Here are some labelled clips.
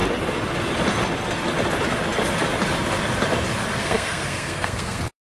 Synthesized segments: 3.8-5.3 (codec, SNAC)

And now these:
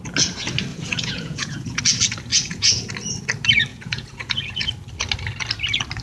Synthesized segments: 0.7-1.8 (vocoder, Vocos); 2.3-2.9; 3.7-4.7

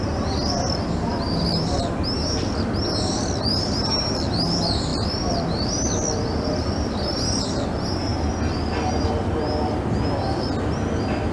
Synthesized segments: 1.1-1.8 (vocoder, BigVGAN v2); 4.9-6.9